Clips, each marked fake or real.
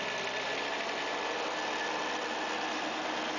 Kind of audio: real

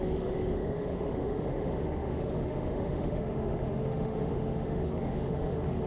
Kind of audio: fake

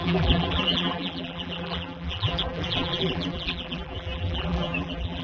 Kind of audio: fake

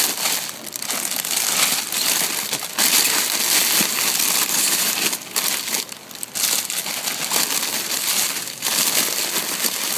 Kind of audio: real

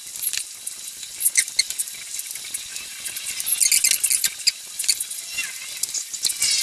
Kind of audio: real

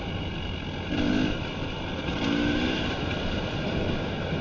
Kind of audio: real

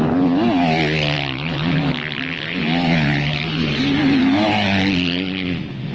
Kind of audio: real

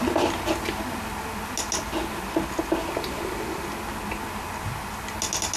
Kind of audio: real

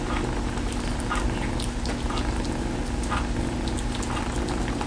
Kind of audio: real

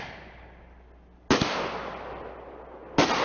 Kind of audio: real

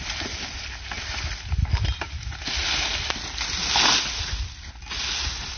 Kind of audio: real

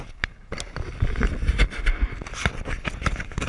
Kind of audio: real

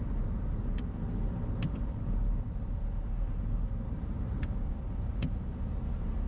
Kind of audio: real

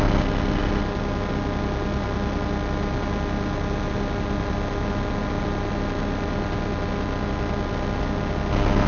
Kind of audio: real